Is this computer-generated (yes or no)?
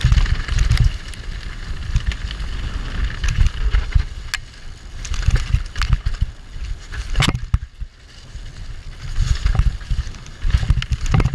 no